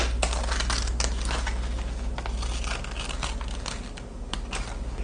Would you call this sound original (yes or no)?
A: yes